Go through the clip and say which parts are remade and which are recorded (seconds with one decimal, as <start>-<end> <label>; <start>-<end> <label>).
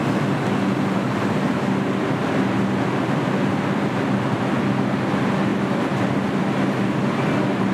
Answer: 0.0-7.7 recorded